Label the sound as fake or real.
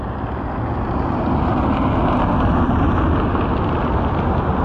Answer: real